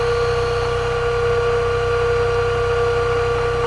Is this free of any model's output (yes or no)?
yes